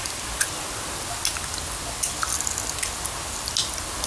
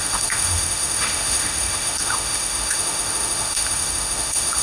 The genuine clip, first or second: first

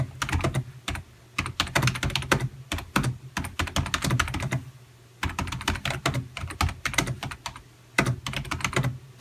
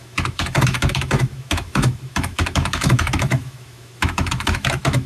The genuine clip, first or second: first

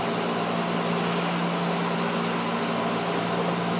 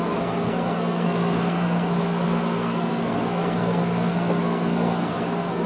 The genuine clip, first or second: first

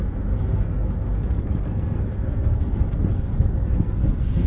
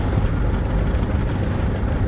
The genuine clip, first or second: second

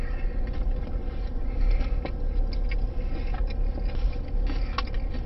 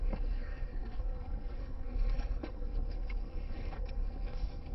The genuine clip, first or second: first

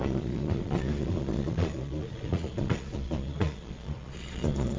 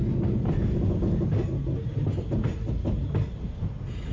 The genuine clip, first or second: second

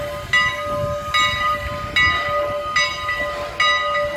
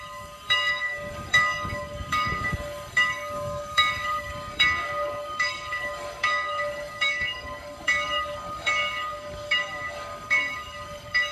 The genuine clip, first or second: first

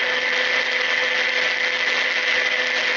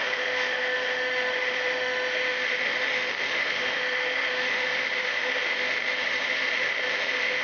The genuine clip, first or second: first